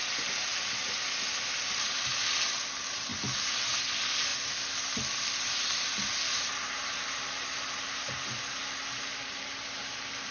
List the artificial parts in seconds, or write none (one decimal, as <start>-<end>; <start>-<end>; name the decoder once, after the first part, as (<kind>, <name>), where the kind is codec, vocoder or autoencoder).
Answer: none